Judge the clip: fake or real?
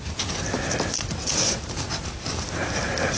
real